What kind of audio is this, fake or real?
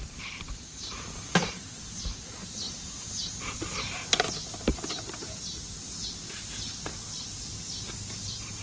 fake